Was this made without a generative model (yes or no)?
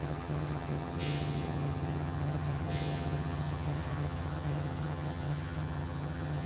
no